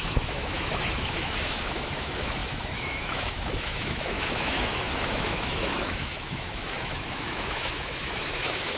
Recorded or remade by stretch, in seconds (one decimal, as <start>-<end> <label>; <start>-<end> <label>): 0.0-8.8 remade